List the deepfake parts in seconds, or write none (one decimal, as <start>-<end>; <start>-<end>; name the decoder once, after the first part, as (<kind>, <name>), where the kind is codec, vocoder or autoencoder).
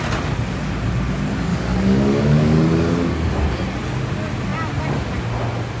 1.5-3.3 (codec, DAC)